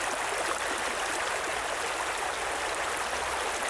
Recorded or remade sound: recorded